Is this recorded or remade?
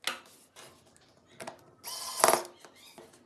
recorded